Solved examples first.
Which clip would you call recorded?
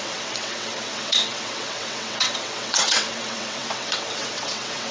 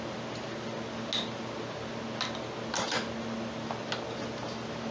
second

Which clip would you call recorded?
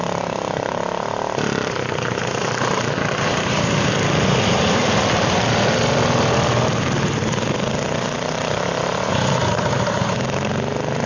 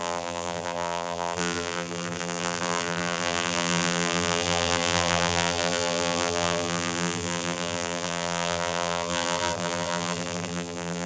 first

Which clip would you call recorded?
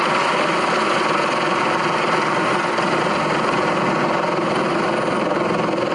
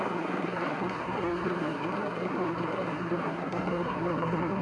first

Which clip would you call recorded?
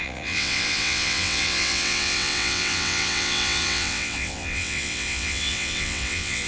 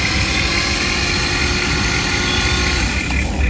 second